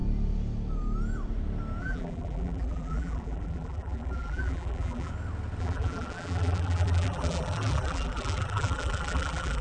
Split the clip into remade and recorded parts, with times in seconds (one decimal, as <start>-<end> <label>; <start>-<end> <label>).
0.0-1.8 recorded; 1.8-5.1 remade; 5.1-5.6 recorded; 5.6-9.6 remade